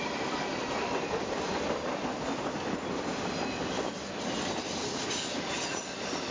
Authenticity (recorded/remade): recorded